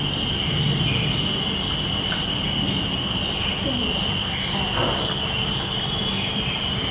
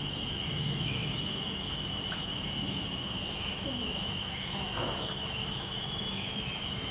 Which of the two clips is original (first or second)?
first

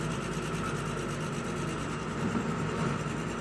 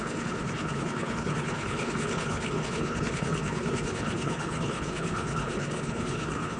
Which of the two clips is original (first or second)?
first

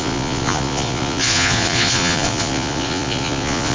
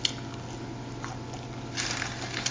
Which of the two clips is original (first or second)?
second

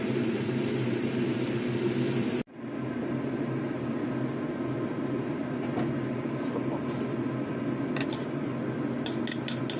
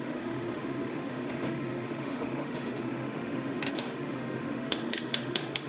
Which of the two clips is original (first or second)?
first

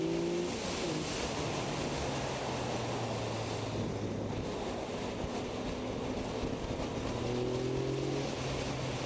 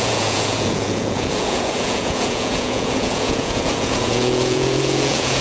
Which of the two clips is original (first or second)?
first